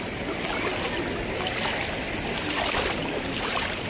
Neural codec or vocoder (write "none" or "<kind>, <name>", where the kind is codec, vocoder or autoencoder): none